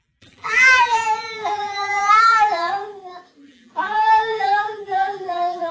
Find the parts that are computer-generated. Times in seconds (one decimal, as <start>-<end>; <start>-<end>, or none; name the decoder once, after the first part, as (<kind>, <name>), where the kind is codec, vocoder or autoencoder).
0.0-2.7 (vocoder, BigVGAN v2); 3.4-5.7